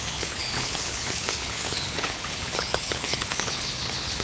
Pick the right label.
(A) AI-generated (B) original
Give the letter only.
A